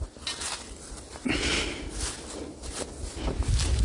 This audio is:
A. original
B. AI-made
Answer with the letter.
A